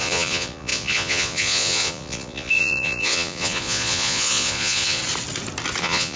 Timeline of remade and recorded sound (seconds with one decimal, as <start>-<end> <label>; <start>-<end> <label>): 0.0-5.0 remade; 5.0-5.8 recorded; 5.8-6.2 remade